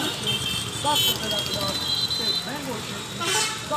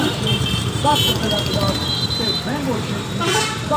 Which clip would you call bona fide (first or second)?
first